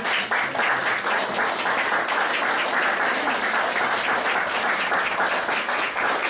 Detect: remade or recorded recorded